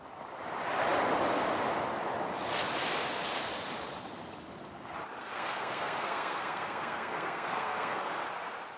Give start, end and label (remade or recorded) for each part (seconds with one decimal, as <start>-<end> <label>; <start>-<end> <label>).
0.0-5.2 recorded; 5.2-8.1 remade; 8.1-8.8 recorded